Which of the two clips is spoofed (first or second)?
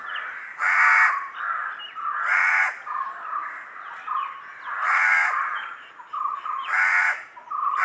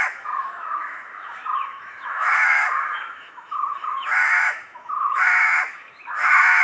second